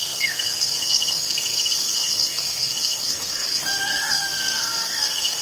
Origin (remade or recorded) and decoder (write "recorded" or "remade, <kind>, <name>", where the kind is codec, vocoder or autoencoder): remade, codec, SNAC